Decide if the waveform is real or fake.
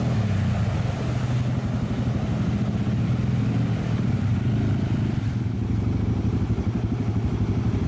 real